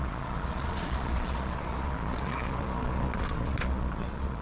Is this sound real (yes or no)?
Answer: no